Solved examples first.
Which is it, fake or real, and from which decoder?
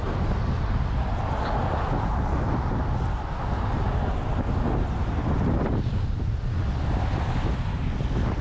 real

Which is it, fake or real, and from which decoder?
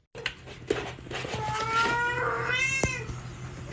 real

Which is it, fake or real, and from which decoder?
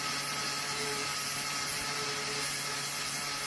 real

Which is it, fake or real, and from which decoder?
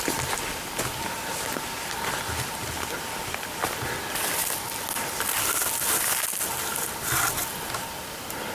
real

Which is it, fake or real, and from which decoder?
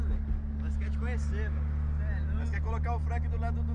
real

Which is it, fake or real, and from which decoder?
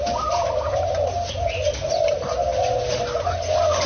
real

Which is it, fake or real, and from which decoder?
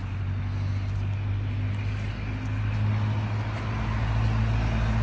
real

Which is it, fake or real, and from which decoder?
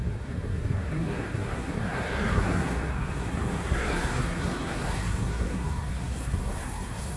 fake, codec, SNAC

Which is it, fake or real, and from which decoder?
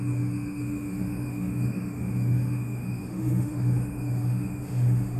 fake, autoencoder, DAC-VAE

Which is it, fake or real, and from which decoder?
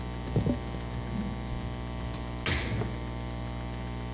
real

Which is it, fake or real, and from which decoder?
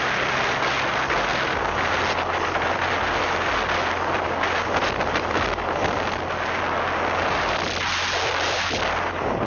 real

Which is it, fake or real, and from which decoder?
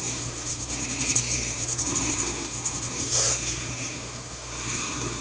fake, codec, SNAC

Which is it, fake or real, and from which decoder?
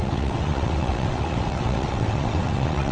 fake, vocoder, WaveNeXt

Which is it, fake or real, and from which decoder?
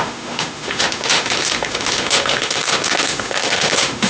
fake, autoencoder, DAC-VAE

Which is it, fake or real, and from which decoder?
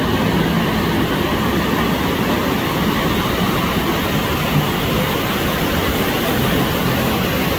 real